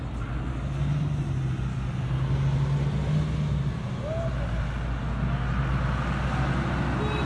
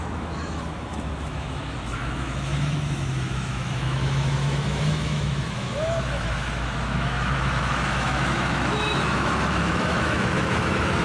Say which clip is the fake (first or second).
second